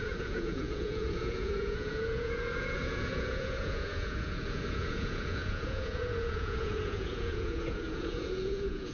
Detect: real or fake fake